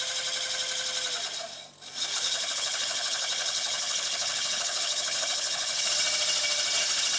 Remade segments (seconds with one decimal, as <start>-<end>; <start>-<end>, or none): 2.1-5.9